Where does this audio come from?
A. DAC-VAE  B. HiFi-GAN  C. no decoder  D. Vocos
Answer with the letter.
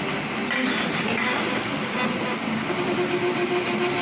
C